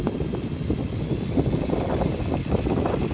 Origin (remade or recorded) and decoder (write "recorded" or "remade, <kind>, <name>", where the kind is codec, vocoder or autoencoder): recorded